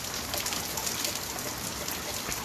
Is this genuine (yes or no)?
yes